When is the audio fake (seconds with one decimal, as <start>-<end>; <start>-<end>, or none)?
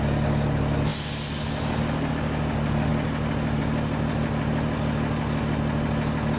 none